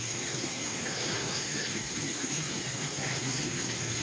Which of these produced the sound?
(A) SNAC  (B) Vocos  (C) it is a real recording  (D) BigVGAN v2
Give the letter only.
A